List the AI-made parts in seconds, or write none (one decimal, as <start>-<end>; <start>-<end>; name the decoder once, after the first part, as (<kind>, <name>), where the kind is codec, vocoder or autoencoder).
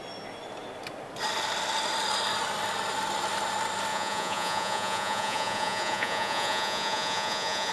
3.9-7.7 (vocoder, Vocos)